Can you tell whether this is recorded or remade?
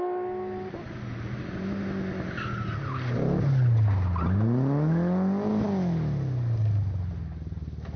recorded